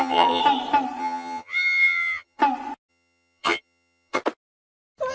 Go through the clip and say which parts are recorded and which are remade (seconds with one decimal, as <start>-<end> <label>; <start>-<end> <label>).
0.0-0.4 remade; 0.4-1.0 recorded; 1.0-2.4 remade; 2.4-2.9 recorded; 2.9-4.2 remade; 4.2-5.1 recorded

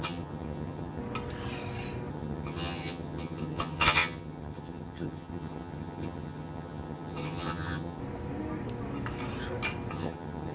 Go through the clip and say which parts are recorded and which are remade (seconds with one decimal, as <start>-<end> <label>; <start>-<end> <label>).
0.0-1.0 remade; 1.0-2.1 recorded; 2.1-8.0 remade; 8.0-9.9 recorded; 9.9-10.5 remade

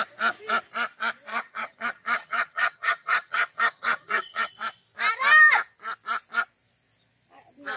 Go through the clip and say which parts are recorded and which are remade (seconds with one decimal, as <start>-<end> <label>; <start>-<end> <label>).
0.0-1.3 recorded; 1.3-4.5 remade; 4.5-7.8 recorded

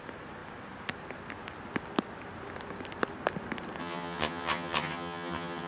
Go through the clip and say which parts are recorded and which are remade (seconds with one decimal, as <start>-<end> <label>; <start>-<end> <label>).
0.0-3.8 recorded; 3.8-5.7 remade

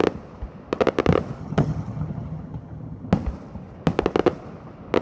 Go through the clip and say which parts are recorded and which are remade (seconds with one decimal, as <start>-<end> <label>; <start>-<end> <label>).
0.0-1.4 recorded; 1.4-3.1 remade; 3.1-5.0 recorded

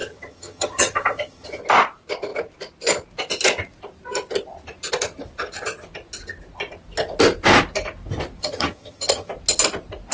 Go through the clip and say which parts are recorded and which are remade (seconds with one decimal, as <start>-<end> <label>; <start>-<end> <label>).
0.0-1.6 remade; 1.6-8.4 recorded; 8.4-9.3 remade; 9.3-10.1 recorded